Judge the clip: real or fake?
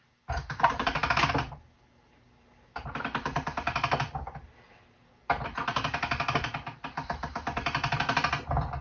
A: real